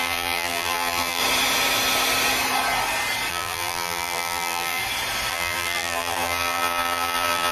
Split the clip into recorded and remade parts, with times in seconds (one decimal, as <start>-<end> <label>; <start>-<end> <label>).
0.0-1.2 remade; 1.2-3.3 recorded; 3.3-4.8 remade; 4.8-5.3 recorded; 5.3-7.5 remade